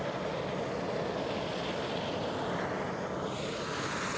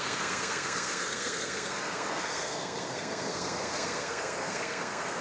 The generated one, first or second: second